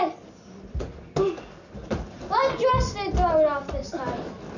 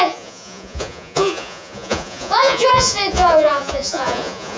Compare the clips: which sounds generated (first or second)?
second